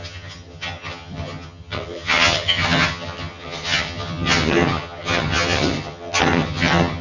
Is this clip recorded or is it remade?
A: remade